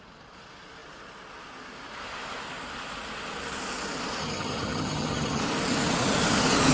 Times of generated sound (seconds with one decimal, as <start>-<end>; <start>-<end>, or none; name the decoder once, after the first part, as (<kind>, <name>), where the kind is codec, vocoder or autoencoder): 4.2-5.4 (vocoder, HiFi-GAN)